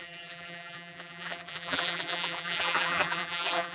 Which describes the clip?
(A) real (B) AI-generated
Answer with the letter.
B